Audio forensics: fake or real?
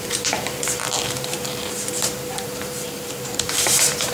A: fake